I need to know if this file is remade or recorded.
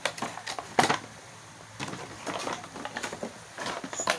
recorded